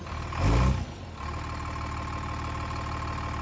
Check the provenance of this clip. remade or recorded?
recorded